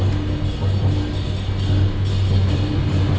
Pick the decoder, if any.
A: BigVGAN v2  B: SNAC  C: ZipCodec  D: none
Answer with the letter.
D